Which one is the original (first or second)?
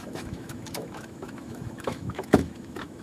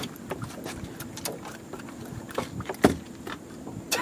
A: second